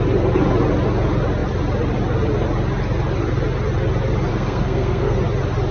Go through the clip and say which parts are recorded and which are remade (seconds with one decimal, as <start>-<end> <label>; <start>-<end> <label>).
0.0-4.3 recorded; 4.3-5.2 remade; 5.2-5.7 recorded